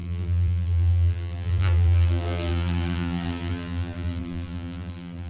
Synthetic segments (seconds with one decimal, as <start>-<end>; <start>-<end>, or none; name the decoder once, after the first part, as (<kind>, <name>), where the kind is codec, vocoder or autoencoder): 0.0-5.3 (vocoder, BigVGAN v2)